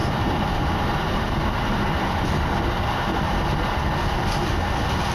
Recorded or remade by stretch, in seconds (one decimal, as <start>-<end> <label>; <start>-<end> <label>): 0.0-2.2 remade; 2.2-3.1 recorded; 3.1-3.6 remade; 3.6-5.1 recorded